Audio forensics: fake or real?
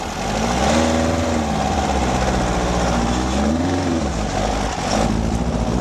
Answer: real